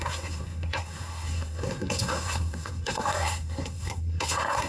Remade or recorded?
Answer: remade